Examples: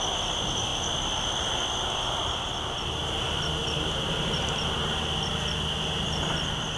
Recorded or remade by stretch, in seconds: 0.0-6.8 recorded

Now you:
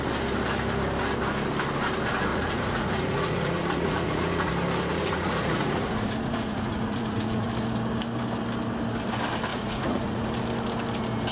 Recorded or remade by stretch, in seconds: 0.0-2.3 recorded; 2.3-4.5 remade; 4.5-4.9 recorded; 4.9-7.5 remade; 7.5-9.5 recorded; 9.5-10.3 remade; 10.3-11.3 recorded

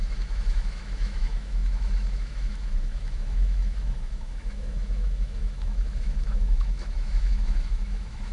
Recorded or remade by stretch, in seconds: 0.0-8.3 remade

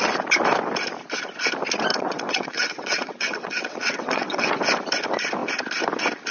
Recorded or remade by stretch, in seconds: 0.0-1.9 recorded; 1.9-4.5 remade; 4.5-6.3 recorded

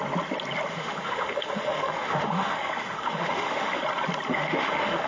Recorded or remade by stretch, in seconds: 0.0-0.7 recorded; 0.7-3.8 remade; 3.8-4.3 recorded; 4.3-5.1 remade